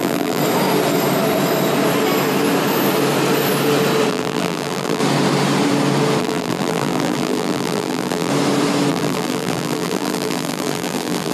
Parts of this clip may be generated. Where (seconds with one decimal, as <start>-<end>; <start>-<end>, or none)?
0.0-0.4; 4.1-5.0; 6.2-8.3; 8.9-11.3